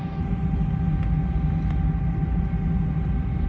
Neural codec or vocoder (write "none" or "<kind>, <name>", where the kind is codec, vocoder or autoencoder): none